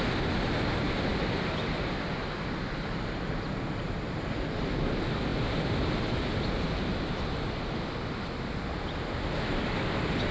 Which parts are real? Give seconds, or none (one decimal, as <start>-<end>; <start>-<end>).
0.0-10.3